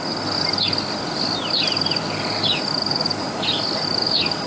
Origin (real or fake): real